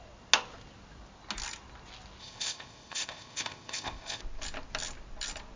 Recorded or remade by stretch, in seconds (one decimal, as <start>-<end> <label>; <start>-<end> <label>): 0.0-2.2 recorded; 2.2-4.2 remade; 4.2-5.6 recorded